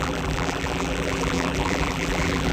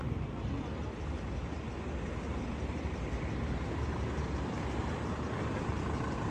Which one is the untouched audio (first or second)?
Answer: second